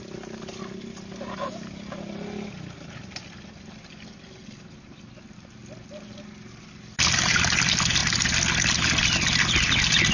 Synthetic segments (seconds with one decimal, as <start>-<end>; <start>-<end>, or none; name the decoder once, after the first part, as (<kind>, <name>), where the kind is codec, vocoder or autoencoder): none